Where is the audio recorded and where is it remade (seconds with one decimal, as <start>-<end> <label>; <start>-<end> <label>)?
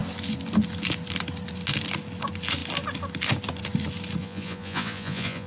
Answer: 0.0-4.2 recorded; 4.2-5.5 remade